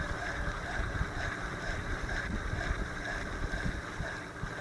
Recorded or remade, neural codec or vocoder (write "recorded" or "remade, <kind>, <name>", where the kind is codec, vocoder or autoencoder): recorded